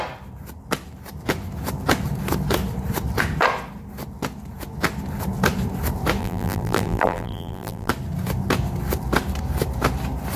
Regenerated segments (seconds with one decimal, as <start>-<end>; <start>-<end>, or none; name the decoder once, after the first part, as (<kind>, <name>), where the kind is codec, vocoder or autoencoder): 6.2-7.9 (vocoder, BigVGAN v2)